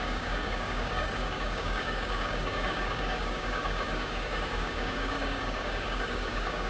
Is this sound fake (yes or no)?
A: yes